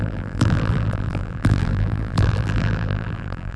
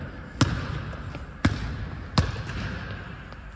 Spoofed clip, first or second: first